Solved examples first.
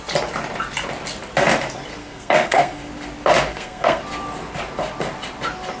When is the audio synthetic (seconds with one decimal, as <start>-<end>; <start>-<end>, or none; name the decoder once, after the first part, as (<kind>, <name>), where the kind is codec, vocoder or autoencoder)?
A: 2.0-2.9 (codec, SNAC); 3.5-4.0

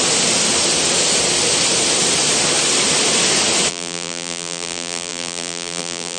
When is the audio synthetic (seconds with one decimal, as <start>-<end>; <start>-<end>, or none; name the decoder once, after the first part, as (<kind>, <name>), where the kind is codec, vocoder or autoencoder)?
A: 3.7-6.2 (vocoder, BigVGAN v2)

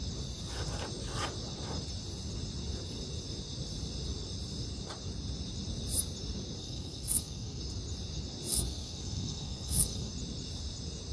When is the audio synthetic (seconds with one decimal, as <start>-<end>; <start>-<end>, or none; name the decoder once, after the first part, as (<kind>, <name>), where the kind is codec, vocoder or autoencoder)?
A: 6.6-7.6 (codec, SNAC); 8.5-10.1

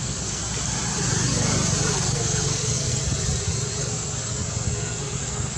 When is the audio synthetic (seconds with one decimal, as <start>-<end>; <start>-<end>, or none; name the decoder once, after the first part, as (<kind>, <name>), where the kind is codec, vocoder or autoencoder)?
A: 0.0-0.4 (codec, SNAC); 1.9-3.0; 3.8-5.6

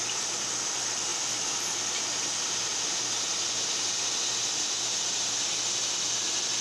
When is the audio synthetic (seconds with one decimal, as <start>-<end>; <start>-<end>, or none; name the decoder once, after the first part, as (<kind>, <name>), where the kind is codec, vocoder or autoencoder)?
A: 0.0-1.1 (vocoder, BigVGAN v2); 2.0-2.7

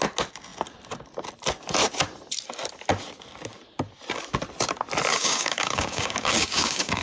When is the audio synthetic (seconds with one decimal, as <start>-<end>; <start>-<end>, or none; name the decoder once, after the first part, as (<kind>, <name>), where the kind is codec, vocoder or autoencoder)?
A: 5.1-7.0 (codec, DAC)

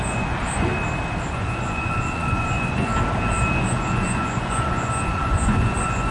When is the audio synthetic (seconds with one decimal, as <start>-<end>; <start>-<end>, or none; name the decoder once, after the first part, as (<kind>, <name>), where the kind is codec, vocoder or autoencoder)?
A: 0.0-0.7 (vocoder, Vocos); 1.3-2.9; 3.6-6.1

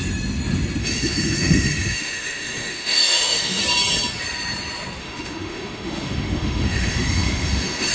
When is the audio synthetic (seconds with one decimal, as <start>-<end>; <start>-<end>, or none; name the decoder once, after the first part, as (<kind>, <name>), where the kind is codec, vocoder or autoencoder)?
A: 0.8-3.6 (autoencoder, DAC-VAE); 5.0-7.9